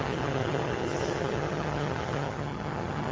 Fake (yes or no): yes